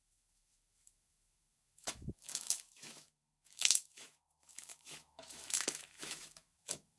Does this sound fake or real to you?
fake